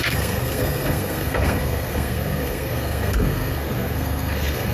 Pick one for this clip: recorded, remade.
remade